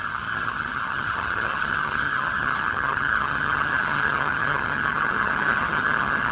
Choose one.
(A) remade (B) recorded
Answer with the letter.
A